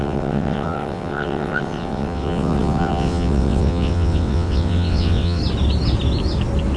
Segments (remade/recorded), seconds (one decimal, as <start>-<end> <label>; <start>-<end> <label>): 0.0-5.4 remade; 5.4-6.8 recorded